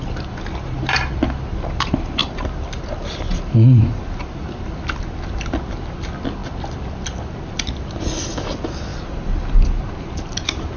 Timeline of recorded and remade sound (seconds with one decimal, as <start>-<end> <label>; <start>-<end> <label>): 0.0-2.2 recorded; 2.2-5.0 remade; 5.0-10.8 recorded